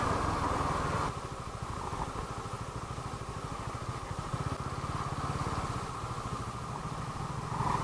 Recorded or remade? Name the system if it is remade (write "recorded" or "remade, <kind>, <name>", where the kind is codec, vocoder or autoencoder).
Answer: recorded